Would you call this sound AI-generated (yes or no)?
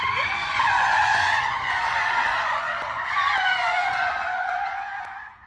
yes